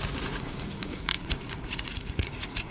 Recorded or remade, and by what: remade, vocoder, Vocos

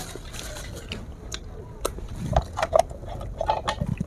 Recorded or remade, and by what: recorded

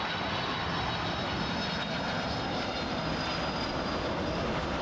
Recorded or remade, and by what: recorded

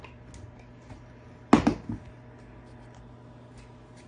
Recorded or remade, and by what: recorded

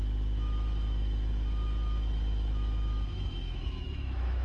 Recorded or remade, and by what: remade, autoencoder, DAC-VAE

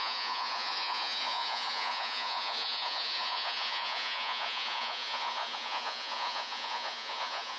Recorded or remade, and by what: remade, vocoder, Vocos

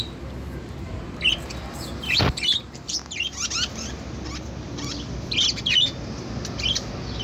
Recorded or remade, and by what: recorded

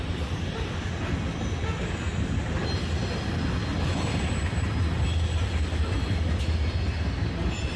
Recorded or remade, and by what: recorded